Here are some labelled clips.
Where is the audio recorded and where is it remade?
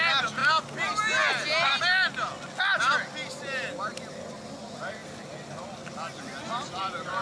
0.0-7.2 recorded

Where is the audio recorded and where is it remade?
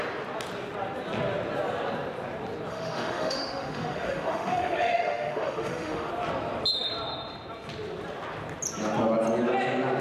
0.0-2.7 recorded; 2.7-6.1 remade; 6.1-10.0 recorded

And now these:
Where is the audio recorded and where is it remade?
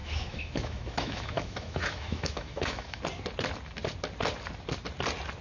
0.0-3.0 remade; 3.0-5.4 recorded